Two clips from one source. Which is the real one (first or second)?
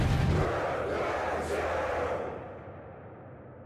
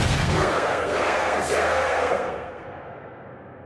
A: first